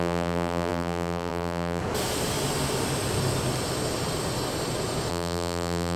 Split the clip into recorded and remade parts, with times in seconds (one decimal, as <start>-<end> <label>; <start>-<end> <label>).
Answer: 0.0-1.8 remade; 1.8-5.1 recorded; 5.1-6.0 remade